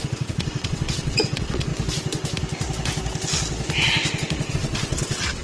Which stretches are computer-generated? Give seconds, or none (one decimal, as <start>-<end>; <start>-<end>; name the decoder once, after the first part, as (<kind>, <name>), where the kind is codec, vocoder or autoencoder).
0.0-1.7 (vocoder, WaveNeXt); 4.5-5.4